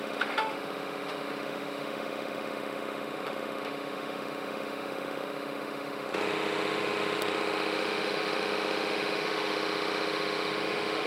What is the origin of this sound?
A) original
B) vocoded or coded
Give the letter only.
B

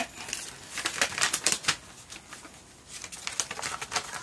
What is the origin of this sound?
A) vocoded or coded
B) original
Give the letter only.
B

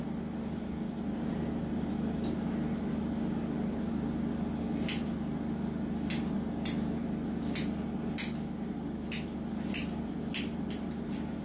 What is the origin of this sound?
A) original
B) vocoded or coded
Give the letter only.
A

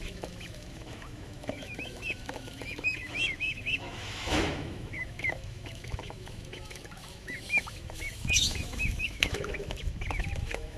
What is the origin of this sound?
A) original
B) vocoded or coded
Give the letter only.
B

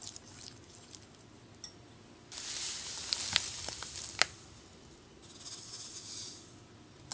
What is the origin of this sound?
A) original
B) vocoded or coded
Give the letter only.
A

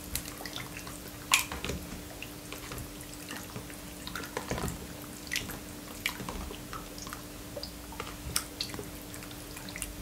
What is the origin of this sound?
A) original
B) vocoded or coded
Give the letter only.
A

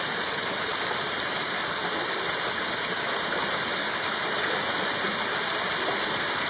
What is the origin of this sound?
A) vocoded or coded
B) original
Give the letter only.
B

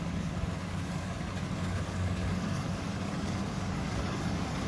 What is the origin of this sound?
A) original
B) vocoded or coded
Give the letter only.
B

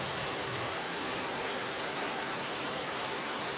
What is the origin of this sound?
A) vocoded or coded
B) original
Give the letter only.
A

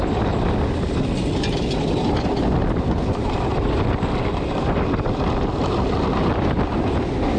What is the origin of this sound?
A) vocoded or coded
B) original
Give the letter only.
B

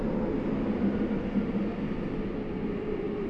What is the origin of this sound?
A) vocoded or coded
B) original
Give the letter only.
B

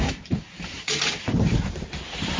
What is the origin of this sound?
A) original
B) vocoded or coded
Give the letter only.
B